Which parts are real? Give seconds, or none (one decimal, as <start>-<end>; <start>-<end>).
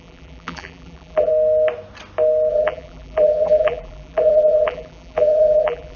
1.3-2.5